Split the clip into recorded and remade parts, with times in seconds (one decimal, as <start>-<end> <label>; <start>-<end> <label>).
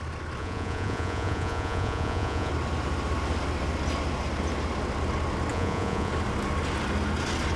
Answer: 0.0-0.4 recorded; 0.4-2.5 remade; 2.5-5.5 recorded; 5.5-6.1 remade; 6.1-7.6 recorded